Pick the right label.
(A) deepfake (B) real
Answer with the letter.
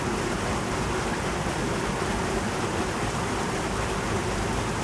B